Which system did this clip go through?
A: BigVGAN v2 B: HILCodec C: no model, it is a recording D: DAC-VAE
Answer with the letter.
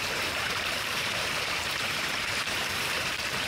A